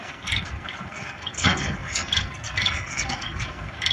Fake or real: fake